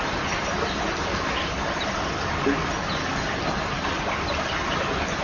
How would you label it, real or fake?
real